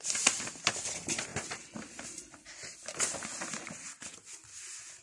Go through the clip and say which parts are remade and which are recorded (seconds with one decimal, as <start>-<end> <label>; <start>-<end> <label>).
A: 0.0-5.0 recorded